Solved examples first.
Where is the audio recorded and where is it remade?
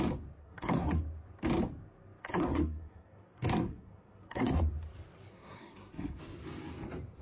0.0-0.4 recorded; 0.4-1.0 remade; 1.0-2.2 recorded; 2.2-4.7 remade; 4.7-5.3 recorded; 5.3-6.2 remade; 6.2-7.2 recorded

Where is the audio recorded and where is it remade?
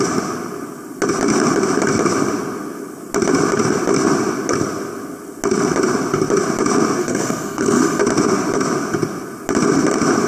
0.0-7.0 recorded; 7.0-8.0 remade; 8.0-10.3 recorded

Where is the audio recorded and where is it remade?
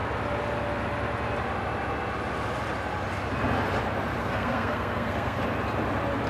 0.0-4.2 recorded; 4.2-5.4 remade; 5.4-6.3 recorded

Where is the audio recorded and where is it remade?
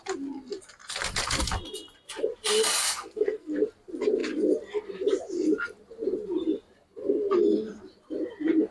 0.0-2.8 recorded; 2.8-3.5 remade; 3.5-8.7 recorded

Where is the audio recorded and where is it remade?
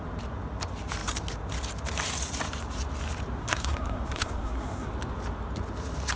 0.0-3.4 recorded; 3.4-4.9 remade; 4.9-6.2 recorded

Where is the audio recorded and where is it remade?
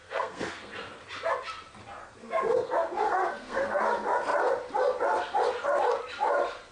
0.0-0.7 remade; 0.7-2.0 recorded; 2.0-3.8 remade; 3.8-6.7 recorded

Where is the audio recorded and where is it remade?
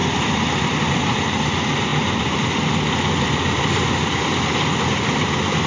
0.0-5.7 recorded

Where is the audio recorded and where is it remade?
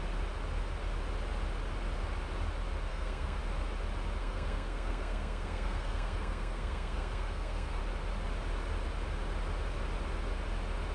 0.0-2.9 recorded; 2.9-3.4 remade; 3.4-4.2 recorded; 4.2-7.8 remade; 7.8-10.9 recorded